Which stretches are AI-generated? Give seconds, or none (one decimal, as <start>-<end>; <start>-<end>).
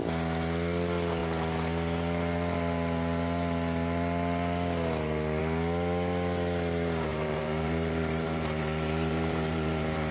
7.1-10.1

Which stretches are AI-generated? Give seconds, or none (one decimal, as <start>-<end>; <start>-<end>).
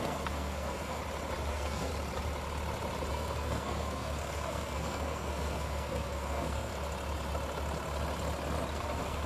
0.0-1.0; 1.5-1.9; 3.1-6.7; 8.7-9.3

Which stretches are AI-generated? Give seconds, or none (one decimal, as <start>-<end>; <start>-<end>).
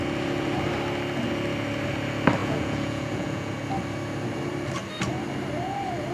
2.4-3.5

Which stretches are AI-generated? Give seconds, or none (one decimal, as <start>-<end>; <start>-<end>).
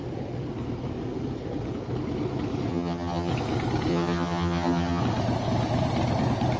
2.7-3.3; 3.9-5.0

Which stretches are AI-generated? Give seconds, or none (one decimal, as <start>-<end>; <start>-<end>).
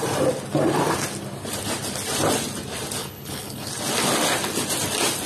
3.0-3.7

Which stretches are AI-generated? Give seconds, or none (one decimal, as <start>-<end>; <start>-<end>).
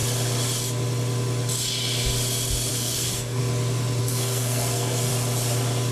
2.7-3.4; 4.0-5.1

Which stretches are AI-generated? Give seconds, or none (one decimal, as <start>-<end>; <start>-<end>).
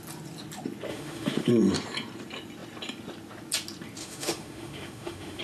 0.9-1.5; 4.0-5.4